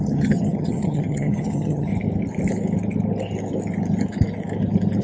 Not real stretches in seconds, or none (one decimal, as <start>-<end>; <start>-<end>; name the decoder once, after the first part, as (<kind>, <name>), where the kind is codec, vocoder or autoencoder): 0.0-1.9 (vocoder, HiFi-GAN)